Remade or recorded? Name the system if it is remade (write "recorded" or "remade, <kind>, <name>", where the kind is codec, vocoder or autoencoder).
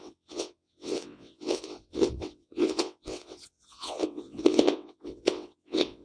remade, vocoder, WaveNeXt